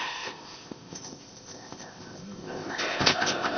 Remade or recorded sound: remade